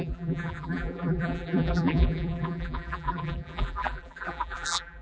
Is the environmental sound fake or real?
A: fake